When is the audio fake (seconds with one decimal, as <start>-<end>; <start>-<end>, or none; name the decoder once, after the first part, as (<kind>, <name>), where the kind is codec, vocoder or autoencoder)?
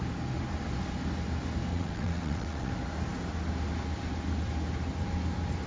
1.7-2.7 (vocoder, WaveNeXt)